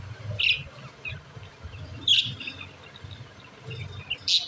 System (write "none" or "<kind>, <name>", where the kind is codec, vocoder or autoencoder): none